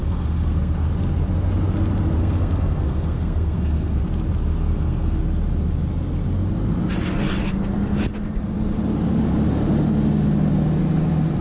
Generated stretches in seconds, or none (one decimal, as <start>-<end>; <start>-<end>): 0.0-0.9; 2.2-4.0; 4.5-5.2